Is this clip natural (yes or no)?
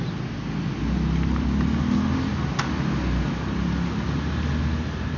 yes